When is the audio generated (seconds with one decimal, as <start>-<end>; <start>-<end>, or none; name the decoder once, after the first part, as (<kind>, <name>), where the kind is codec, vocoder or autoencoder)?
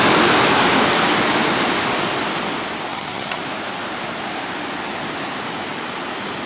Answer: 2.9-3.4 (vocoder, HiFi-GAN)